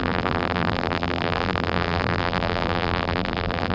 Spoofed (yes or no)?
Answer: yes